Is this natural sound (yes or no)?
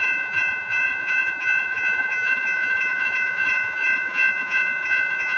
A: no